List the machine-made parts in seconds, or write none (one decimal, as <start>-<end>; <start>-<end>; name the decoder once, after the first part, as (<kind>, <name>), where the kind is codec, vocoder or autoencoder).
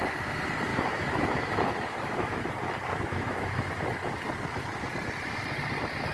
0.7-2.5 (autoencoder, DAC-VAE); 3.1-4.1